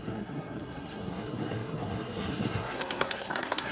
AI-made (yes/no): yes